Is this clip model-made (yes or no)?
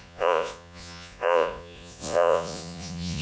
yes